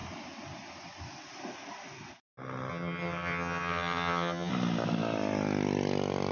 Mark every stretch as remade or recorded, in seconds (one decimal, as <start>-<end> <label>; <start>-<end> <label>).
0.0-2.7 recorded; 2.7-4.5 remade; 4.5-6.3 recorded